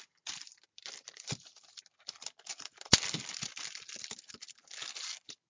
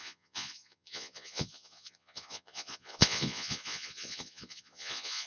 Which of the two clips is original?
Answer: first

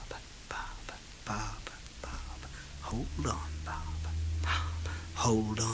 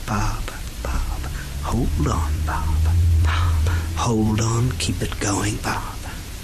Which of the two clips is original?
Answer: first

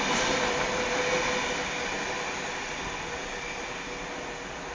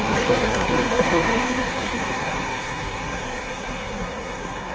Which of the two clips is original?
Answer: first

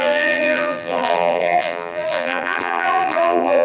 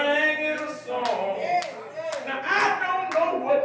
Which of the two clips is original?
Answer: second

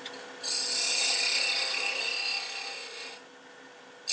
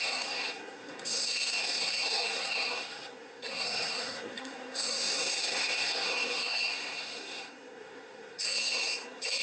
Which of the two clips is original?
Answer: first